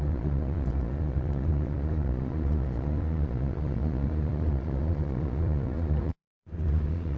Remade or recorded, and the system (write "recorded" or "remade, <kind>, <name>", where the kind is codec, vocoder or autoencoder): remade, vocoder, Vocos